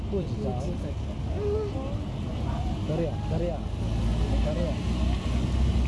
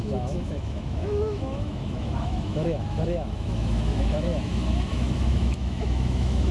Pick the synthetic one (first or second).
second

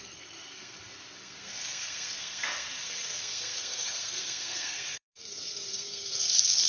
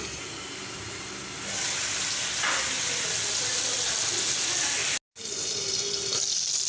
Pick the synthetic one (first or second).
first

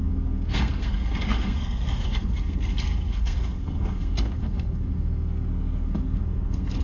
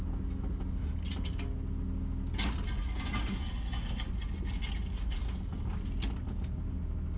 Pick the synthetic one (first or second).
first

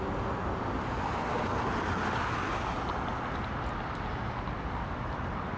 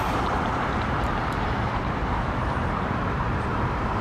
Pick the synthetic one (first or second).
second